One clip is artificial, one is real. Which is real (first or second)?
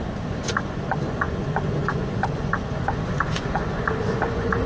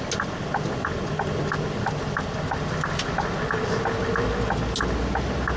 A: second